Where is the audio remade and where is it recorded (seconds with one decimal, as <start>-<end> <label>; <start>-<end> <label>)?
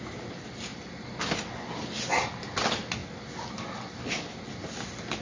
0.0-5.2 recorded